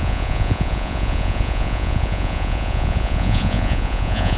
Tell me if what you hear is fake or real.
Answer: fake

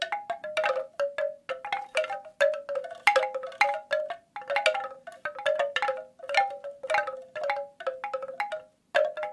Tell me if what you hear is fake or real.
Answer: real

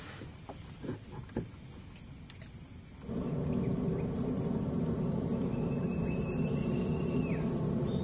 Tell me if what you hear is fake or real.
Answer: real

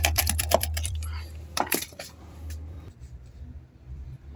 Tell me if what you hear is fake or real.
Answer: fake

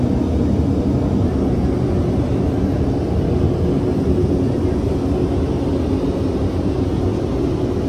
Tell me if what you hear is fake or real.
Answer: real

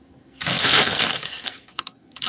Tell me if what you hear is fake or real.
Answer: fake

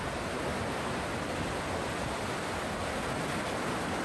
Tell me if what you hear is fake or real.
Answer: real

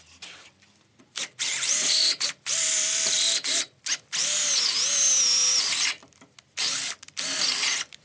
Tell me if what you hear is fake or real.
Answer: real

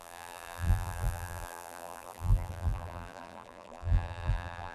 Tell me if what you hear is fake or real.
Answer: fake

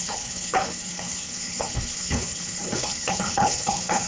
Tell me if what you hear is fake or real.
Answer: fake